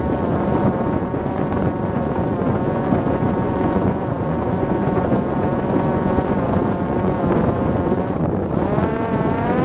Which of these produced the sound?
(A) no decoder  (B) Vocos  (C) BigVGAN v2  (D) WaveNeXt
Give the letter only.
B